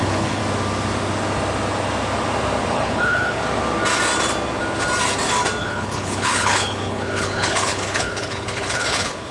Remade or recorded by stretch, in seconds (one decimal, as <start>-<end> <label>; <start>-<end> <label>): 0.0-0.4 remade; 0.4-2.7 recorded; 2.7-3.4 remade; 3.4-5.6 recorded; 5.6-9.3 remade